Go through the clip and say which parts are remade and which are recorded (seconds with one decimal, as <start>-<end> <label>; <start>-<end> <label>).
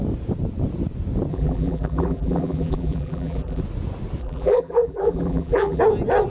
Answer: 0.0-1.3 recorded; 1.3-3.6 remade; 3.6-4.2 recorded; 4.2-5.8 remade; 5.8-6.3 recorded